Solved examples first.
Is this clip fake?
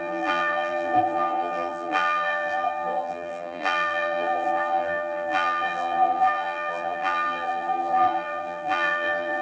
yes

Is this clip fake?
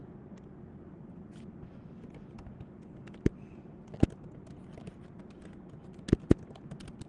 no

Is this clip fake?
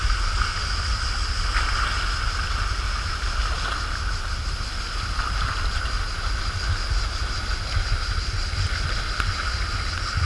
no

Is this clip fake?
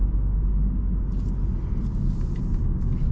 no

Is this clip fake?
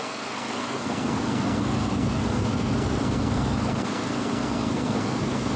yes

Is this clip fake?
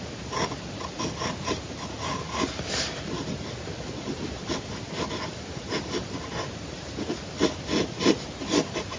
no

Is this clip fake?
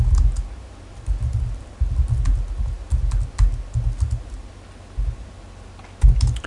no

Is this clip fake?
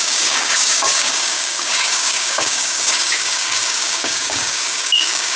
yes